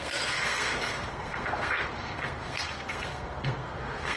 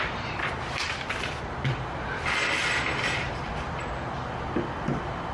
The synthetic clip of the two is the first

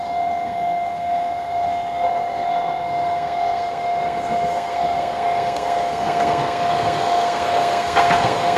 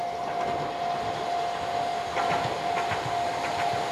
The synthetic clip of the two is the first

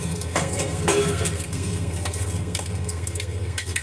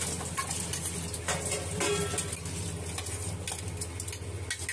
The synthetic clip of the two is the first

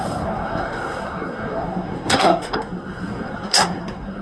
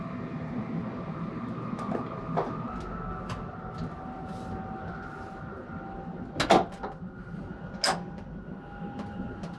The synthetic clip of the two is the first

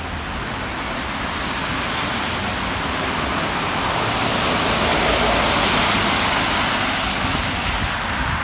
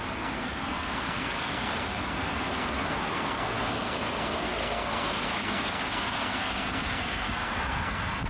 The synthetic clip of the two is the second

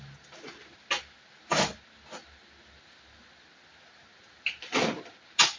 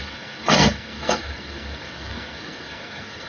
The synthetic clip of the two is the second